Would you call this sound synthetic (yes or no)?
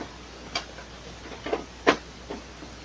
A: no